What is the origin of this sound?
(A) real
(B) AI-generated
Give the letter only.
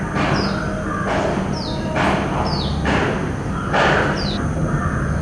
A